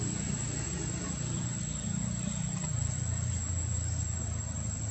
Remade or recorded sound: recorded